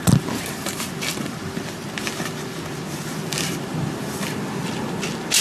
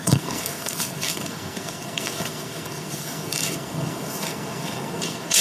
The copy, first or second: second